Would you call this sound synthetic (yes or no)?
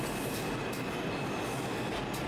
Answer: no